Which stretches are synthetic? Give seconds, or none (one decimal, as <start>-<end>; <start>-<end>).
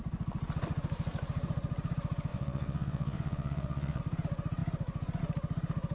2.3-4.0